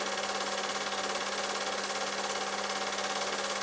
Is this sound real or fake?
real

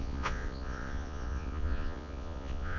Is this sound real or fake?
fake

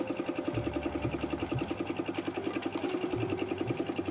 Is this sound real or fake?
real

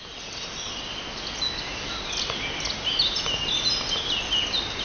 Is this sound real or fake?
real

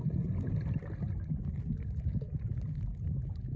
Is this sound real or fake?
real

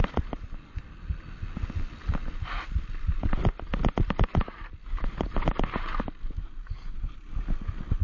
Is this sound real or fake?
real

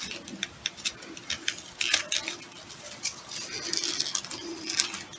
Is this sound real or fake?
real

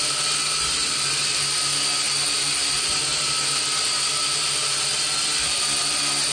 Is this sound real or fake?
real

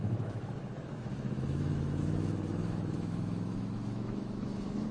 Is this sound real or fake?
fake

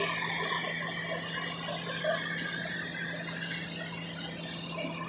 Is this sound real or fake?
real